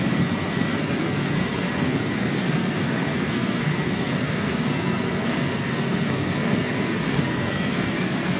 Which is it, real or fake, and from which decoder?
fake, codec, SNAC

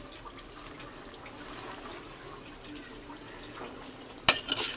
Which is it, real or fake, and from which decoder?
real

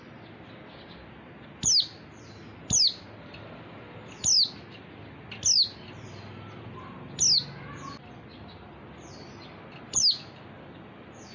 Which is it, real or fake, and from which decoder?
real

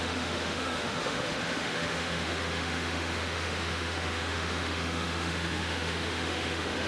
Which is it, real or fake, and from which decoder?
fake, autoencoder, DAC-VAE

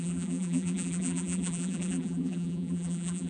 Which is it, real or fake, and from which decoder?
fake, vocoder, BigVGAN v2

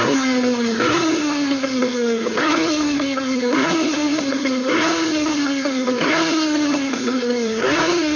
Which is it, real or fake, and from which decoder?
fake, codec, SNAC